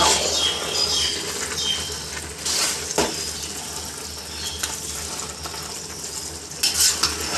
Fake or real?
real